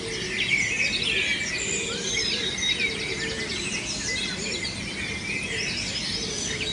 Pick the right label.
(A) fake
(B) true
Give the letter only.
B